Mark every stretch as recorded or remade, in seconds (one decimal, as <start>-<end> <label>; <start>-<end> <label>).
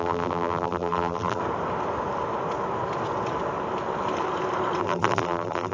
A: 0.0-1.4 remade; 1.4-4.8 recorded; 4.8-5.7 remade